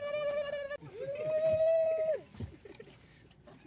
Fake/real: real